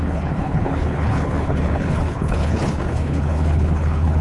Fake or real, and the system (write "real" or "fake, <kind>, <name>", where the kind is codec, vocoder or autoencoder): fake, codec, HILCodec